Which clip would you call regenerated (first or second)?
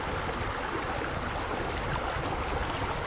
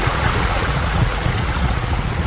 second